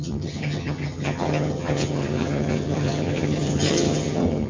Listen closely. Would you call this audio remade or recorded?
remade